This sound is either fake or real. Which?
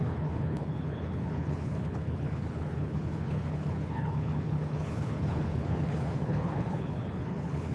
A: fake